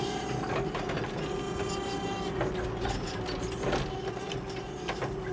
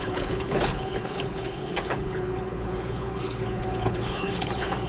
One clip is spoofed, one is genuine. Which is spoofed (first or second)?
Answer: second